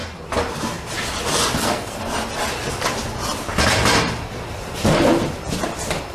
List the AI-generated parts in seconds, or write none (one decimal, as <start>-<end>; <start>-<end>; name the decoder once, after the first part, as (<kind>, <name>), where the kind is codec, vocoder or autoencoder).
1.6-2.0 (codec, SNAC)